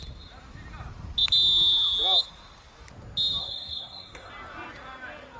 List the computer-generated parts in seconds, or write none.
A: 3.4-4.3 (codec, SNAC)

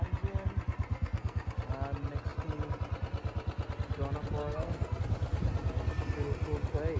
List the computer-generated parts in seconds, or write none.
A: 0.9-1.5 (codec, SNAC); 4.4-5.0